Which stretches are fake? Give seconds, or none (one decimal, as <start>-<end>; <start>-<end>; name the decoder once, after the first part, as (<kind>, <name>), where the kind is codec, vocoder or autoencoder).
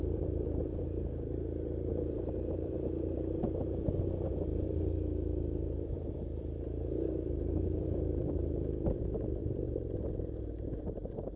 0.0-11.4 (vocoder, BigVGAN v2)